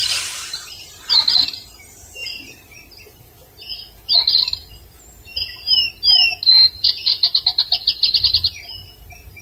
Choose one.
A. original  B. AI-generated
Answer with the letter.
A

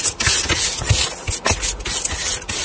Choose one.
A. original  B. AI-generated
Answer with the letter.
A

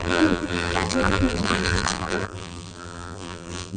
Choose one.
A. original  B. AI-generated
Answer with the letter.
B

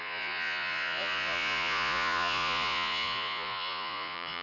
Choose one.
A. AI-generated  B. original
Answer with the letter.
A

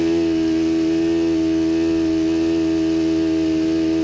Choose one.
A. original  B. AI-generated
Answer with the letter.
A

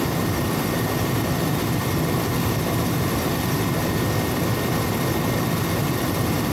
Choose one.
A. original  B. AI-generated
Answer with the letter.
A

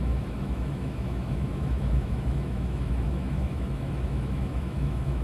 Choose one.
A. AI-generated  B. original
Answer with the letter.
A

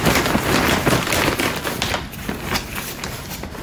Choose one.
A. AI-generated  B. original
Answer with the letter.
A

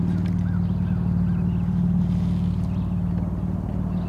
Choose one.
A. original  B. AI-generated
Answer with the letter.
A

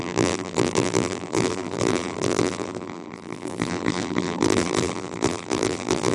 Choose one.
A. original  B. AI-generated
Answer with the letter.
B